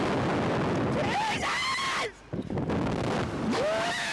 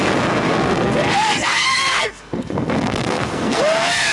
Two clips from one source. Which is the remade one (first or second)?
second